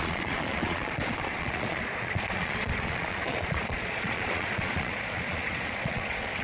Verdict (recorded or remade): remade